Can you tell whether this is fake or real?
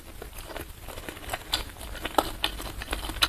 real